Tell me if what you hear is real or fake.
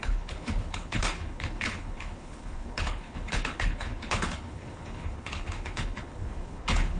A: fake